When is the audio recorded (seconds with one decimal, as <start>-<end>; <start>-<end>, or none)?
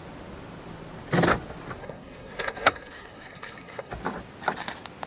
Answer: 0.0-1.8; 3.9-5.1